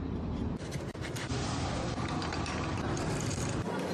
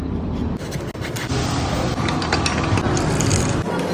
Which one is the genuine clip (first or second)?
second